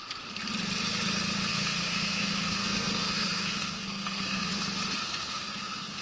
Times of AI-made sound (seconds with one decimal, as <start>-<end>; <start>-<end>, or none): 1.5-4.5; 5.0-6.0